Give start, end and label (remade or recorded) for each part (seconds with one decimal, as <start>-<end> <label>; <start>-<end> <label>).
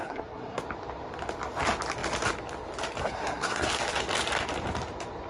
0.0-0.6 remade; 0.6-3.0 recorded; 3.0-3.7 remade; 3.7-5.3 recorded